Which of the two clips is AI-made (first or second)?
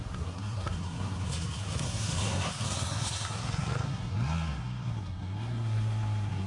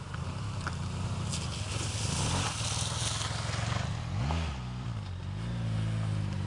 first